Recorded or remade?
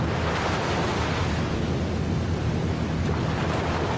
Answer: recorded